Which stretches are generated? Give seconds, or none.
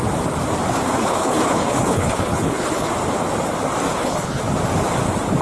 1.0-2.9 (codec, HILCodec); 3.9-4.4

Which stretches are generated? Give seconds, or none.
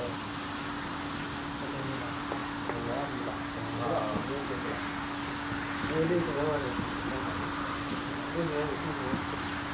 none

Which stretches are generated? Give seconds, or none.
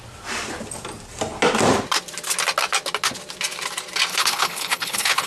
4.1-5.3 (codec, HILCodec)